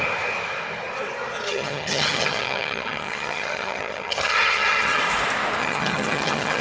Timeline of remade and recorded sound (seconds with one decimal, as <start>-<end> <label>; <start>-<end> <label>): 0.0-1.5 recorded; 1.5-5.0 remade; 5.0-5.6 recorded; 5.6-6.6 remade